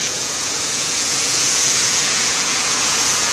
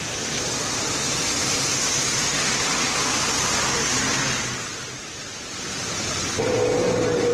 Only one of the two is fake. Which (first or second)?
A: first